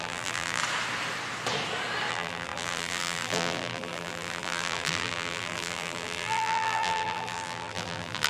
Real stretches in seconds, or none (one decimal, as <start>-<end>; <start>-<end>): 0.6-2.1